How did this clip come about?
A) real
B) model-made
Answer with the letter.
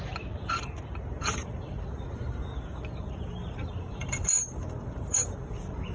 B